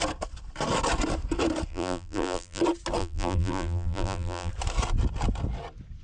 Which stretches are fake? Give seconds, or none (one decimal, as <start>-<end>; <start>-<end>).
1.7-2.6; 3.0-4.5